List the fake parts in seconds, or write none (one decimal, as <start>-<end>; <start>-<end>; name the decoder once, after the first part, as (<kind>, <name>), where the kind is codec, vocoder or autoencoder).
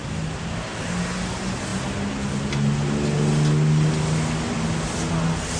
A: none